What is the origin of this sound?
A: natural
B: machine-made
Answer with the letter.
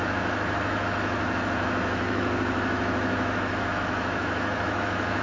B